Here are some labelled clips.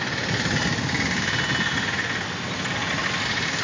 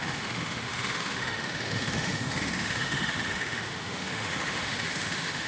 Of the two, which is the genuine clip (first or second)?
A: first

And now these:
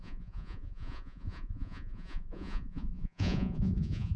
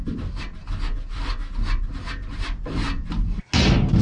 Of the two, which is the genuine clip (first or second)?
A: second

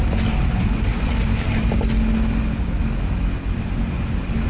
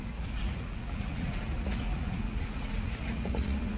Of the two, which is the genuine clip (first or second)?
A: first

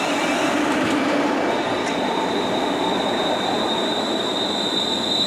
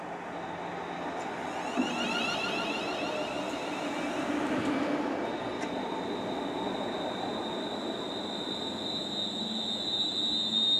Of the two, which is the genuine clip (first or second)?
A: second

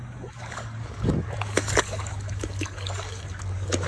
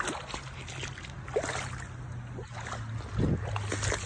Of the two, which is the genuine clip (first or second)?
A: second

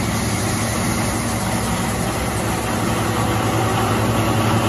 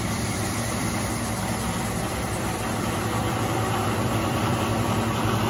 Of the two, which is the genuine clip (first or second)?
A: first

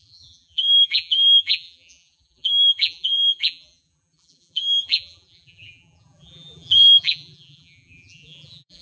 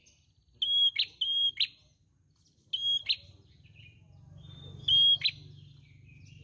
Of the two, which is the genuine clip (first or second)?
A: second